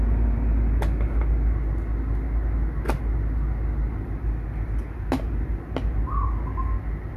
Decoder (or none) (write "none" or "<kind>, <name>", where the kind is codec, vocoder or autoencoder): none